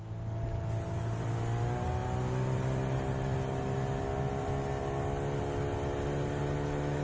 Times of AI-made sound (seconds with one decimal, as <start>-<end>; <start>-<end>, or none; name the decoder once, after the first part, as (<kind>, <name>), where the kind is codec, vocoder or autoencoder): none